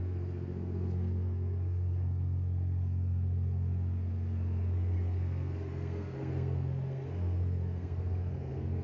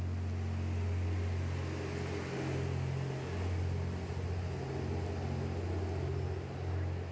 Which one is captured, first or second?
second